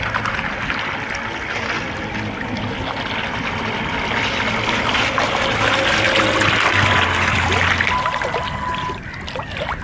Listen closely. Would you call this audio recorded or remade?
recorded